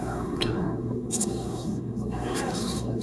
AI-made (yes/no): yes